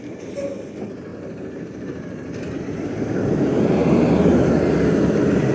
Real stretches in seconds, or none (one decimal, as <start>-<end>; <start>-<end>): 0.0-1.1; 3.9-5.5